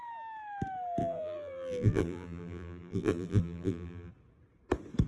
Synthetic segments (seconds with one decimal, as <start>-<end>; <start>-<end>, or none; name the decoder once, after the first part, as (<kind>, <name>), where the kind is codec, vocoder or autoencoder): 1.0-4.1 (vocoder, BigVGAN v2)